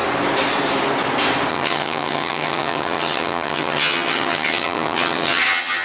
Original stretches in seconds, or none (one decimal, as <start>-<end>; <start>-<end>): 0.0-1.5